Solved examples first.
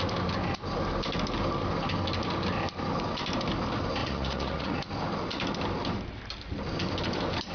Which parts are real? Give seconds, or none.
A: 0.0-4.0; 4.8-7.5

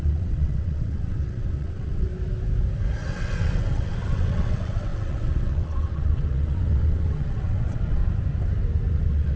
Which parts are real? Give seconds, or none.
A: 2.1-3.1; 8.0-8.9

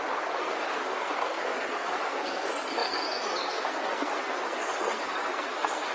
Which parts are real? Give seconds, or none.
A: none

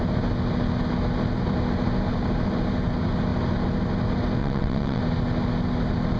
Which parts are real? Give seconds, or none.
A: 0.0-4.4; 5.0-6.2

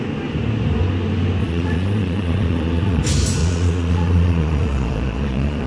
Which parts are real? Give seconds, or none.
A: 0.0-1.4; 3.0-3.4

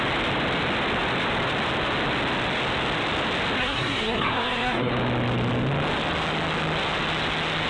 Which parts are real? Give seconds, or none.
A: 0.0-3.6; 4.9-7.7

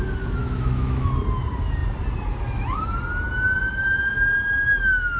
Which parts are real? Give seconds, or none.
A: 0.0-0.4; 1.1-5.2

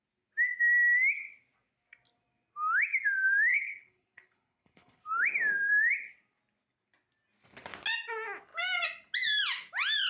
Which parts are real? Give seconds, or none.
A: 0.0-3.5; 5.0-10.1